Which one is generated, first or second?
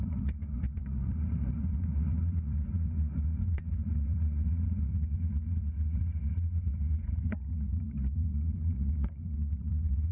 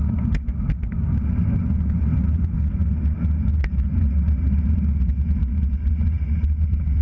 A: first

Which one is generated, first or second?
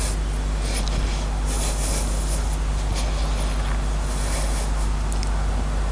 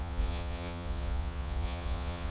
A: second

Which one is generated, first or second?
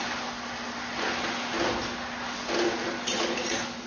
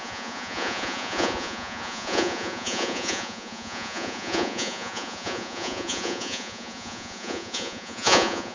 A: second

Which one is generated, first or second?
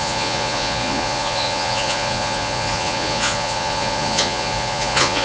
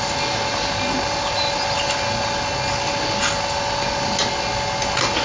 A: first